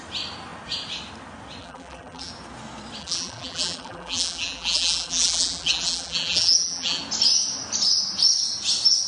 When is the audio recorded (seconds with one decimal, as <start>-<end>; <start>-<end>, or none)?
0.0-1.6; 2.3-3.0; 7.0-9.1